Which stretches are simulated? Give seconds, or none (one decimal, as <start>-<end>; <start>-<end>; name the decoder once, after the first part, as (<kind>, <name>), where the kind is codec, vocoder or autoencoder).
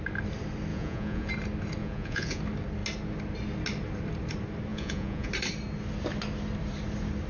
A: 0.7-1.3 (vocoder, Vocos); 1.8-2.4; 4.7-5.3